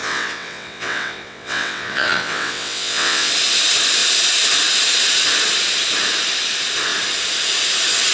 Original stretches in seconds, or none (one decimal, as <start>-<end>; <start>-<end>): 3.3-8.1